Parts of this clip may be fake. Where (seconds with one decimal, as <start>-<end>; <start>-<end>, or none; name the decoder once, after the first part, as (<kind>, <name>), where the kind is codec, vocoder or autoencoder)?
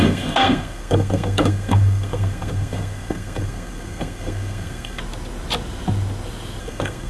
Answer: 0.0-5.0 (codec, SNAC); 6.6-7.1